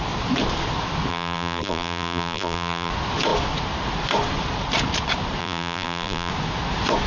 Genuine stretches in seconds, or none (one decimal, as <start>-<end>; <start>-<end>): 0.0-1.1; 2.9-5.4; 6.3-7.1